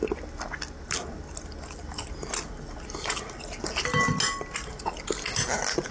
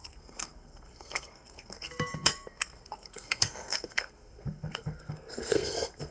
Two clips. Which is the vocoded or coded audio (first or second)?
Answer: second